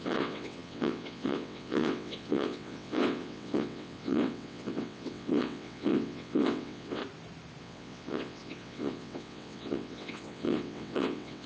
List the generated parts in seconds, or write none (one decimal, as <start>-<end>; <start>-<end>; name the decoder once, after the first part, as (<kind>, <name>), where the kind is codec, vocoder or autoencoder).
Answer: 0.0-7.0 (vocoder, WaveNeXt); 7.6-11.5